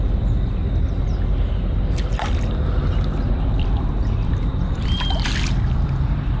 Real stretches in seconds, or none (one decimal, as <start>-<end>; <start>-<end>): 0.6-3.6